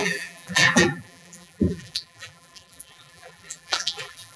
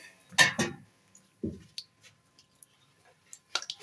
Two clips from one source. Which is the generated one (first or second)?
first